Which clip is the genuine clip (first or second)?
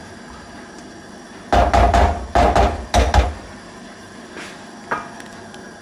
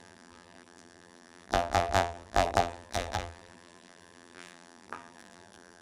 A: first